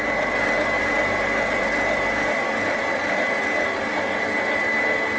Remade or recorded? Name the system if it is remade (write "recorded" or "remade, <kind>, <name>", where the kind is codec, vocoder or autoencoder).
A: recorded